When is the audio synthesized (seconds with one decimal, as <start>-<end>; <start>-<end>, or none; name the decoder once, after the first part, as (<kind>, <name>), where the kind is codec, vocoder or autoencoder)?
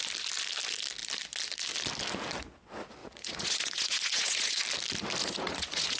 3.0-4.6 (vocoder, Vocos); 5.2-6.0